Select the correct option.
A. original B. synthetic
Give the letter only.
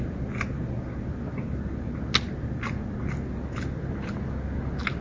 A